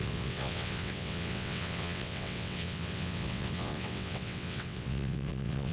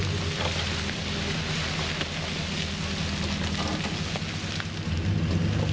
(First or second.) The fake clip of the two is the first